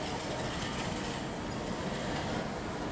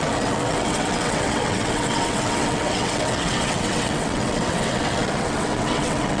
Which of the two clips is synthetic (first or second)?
second